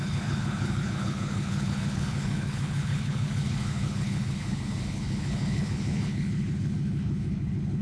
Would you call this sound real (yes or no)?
no